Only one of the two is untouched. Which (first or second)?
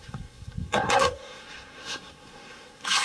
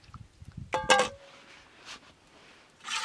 second